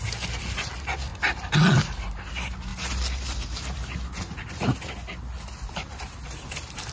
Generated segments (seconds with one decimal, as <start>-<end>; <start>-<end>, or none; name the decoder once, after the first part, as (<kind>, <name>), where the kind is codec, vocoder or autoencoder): none